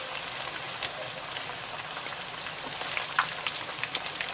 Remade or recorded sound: recorded